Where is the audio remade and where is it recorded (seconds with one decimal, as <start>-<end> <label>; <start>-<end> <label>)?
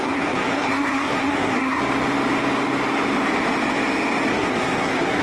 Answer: 0.0-1.8 remade; 1.8-4.3 recorded; 4.3-5.2 remade